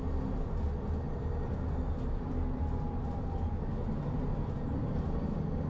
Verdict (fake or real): real